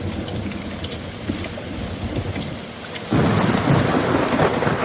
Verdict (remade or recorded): recorded